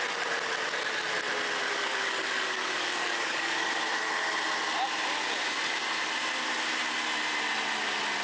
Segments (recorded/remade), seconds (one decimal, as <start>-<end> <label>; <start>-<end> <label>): 0.0-1.6 recorded; 1.6-3.7 remade; 3.7-8.2 recorded